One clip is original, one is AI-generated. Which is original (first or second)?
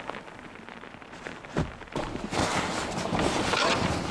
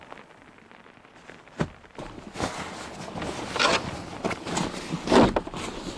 second